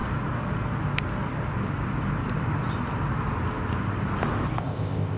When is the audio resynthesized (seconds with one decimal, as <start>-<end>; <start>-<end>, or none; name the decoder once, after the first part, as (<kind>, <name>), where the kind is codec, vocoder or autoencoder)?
4.6-5.2 (codec, ZipCodec)